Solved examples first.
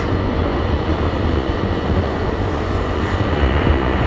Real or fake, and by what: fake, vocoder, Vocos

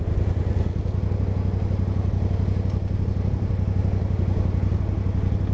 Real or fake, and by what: real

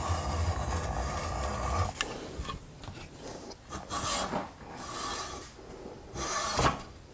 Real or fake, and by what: real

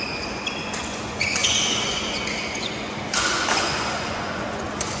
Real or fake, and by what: fake, vocoder, Vocos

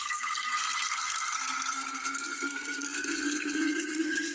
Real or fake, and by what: fake, codec, SNAC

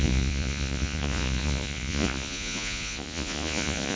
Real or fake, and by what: fake, vocoder, Vocos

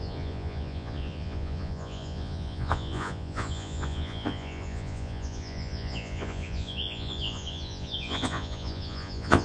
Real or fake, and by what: fake, vocoder, Vocos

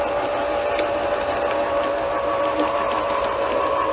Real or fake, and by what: real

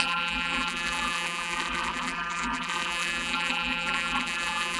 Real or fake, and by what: fake, vocoder, BigVGAN v2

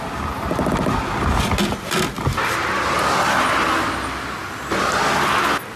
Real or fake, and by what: real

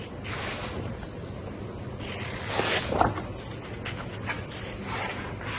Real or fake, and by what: real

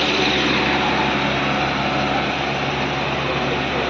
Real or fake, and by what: real